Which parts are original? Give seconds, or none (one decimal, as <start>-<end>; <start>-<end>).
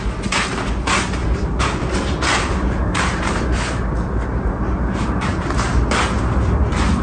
0.0-1.2; 3.4-4.3; 5.8-7.0